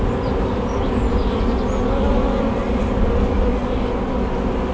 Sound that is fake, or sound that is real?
real